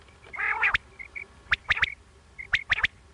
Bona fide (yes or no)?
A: yes